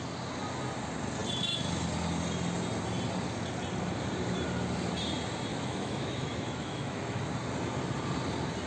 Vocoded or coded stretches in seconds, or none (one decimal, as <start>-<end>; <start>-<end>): 5.5-7.3